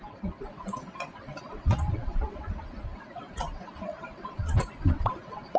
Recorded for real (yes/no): no